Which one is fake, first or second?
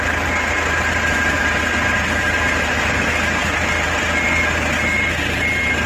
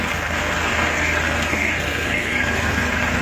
second